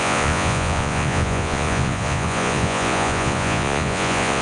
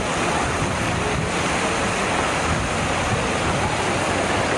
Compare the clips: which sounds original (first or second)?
second